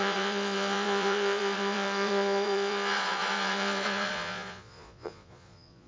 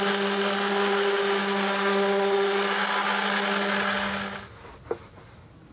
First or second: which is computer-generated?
first